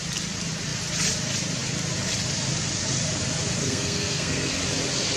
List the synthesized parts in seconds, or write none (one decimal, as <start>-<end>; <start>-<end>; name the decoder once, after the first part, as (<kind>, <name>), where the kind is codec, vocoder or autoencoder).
3.6-4.5 (codec, SNAC)